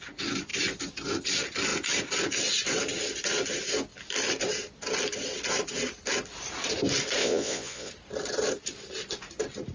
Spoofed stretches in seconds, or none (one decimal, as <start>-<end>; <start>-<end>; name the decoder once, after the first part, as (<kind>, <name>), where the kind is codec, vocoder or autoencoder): 7.2-7.9 (vocoder, Vocos)